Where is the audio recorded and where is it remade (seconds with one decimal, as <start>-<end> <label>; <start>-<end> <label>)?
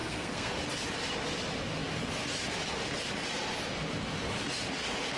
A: 0.0-0.5 remade; 0.5-5.2 recorded